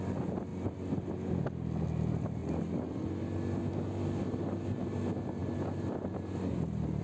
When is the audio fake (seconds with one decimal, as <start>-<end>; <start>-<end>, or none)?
none